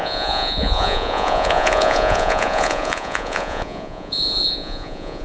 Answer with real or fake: fake